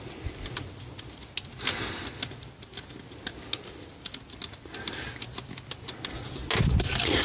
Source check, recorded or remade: recorded